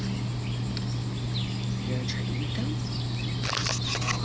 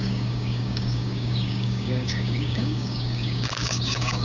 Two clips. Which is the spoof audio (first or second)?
second